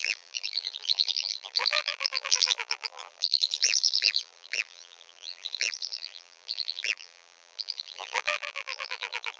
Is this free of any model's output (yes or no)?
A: no